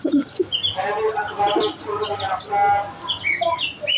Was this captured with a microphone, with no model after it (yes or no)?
yes